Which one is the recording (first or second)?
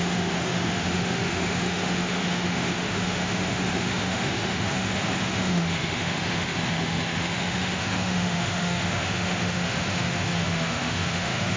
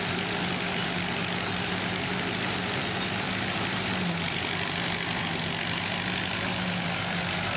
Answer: second